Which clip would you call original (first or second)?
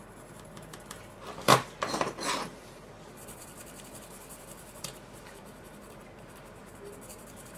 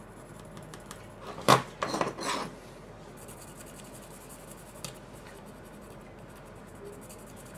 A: second